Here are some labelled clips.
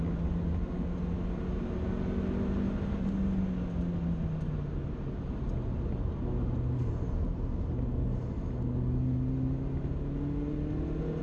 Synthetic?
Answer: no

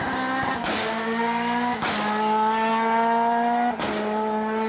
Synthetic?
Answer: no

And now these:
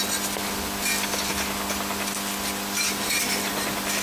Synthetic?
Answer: no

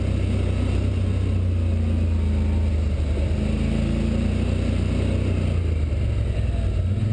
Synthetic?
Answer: no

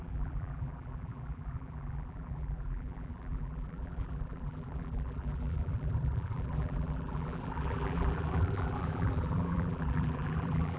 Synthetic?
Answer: yes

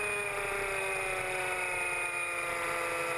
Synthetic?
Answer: no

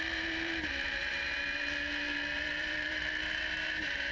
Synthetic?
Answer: yes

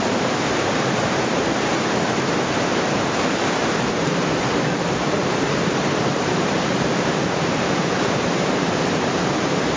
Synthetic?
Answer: yes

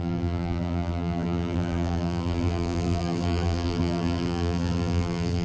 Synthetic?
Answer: yes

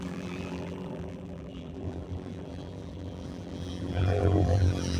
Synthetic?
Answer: yes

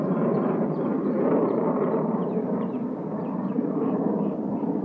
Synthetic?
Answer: yes